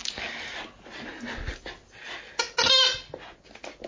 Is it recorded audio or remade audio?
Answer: recorded